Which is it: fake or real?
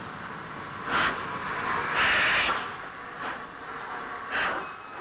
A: real